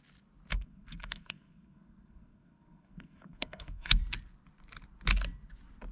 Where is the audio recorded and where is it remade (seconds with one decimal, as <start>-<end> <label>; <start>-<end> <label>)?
0.0-0.5 recorded; 0.5-4.0 remade; 4.0-5.9 recorded